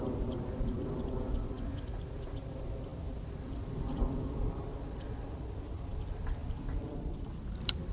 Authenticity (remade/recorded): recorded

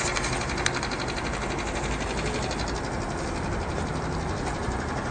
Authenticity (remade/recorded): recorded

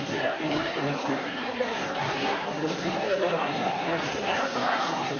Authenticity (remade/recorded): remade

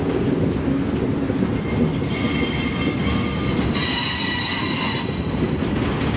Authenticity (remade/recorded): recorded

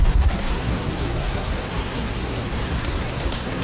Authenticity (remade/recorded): remade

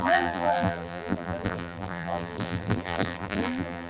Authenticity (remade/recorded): remade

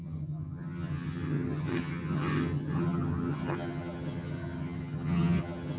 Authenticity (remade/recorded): remade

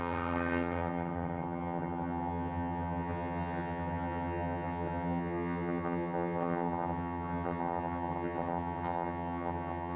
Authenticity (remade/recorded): remade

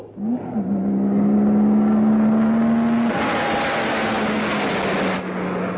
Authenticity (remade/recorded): recorded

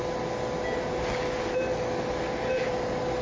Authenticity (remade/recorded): recorded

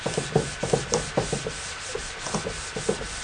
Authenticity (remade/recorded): recorded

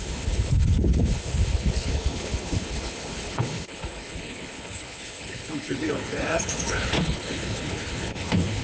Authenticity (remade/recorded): remade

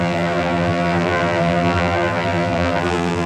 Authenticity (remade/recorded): remade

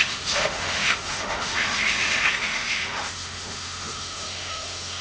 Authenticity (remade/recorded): remade